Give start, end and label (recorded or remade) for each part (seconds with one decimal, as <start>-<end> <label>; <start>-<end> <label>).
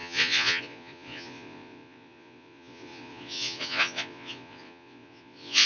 0.0-5.7 remade